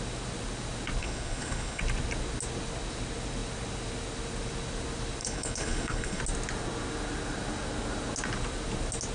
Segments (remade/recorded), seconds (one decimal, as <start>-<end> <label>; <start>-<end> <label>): 0.0-1.0 recorded; 1.0-1.8 remade; 1.8-5.2 recorded; 5.2-6.2 remade; 6.2-9.1 recorded